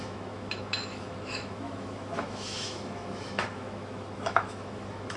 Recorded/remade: remade